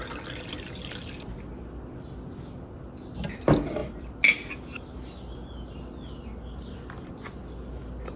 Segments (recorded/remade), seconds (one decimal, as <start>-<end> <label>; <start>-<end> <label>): 0.0-8.2 recorded